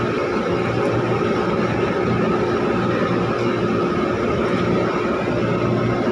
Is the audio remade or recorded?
recorded